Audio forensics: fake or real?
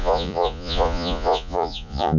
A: fake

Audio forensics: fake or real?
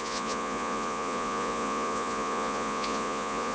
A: fake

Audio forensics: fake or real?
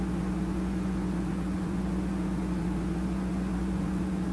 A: fake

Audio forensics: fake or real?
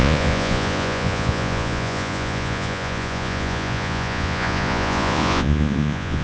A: fake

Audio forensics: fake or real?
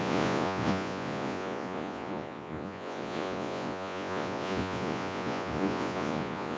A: fake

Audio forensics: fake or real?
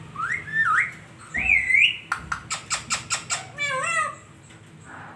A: real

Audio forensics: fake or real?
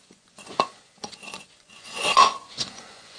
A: fake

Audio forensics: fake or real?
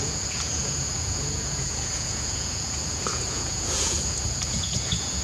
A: fake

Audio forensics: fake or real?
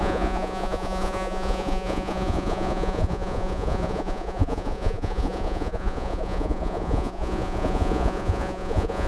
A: fake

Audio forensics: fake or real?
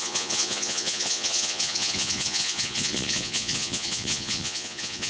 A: fake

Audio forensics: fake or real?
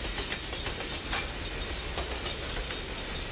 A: real